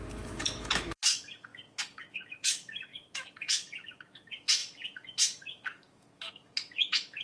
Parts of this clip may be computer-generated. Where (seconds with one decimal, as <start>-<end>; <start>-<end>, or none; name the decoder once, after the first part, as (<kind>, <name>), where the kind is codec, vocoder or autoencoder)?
0.0-7.2 (autoencoder, DAC-VAE)